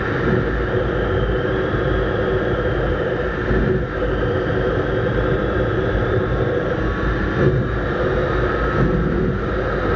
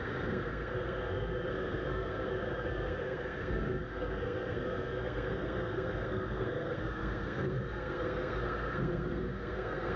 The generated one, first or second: second